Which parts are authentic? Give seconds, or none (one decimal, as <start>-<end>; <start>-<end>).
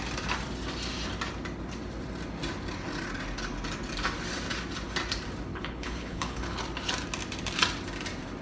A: 0.0-5.5; 6.6-8.4